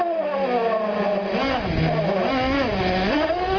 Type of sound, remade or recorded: recorded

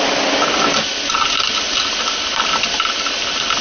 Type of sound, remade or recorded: recorded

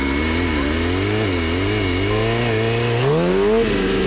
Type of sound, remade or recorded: recorded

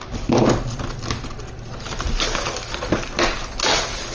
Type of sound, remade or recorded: recorded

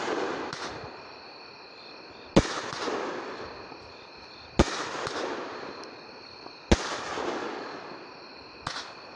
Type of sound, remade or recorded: recorded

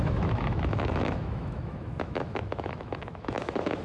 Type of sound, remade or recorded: remade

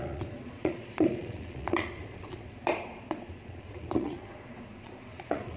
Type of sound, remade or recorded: remade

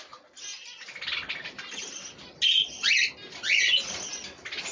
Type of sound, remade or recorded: recorded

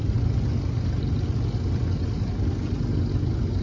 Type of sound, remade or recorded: recorded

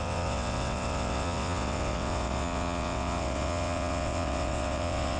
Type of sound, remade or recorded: remade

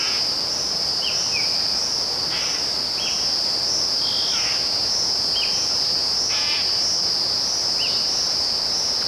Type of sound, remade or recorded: recorded